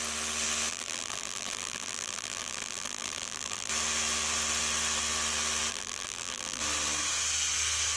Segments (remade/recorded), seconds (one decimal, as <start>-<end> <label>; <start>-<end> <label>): 0.0-0.7 recorded; 0.7-3.7 remade; 3.7-5.7 recorded; 5.7-6.6 remade; 6.6-8.0 recorded